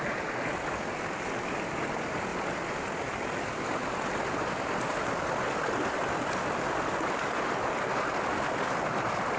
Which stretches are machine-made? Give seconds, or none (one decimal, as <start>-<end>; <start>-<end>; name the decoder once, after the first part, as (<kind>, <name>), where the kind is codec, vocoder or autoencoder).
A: none